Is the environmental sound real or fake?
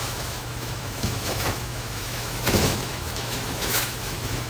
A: fake